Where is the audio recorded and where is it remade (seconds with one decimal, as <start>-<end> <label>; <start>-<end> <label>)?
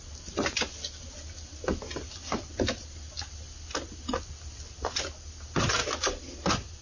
0.0-6.8 recorded